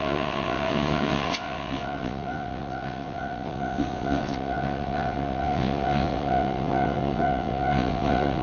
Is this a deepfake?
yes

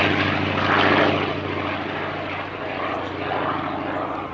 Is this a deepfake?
no